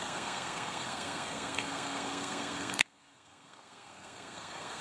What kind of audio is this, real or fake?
fake